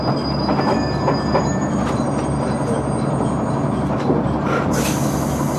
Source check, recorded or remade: recorded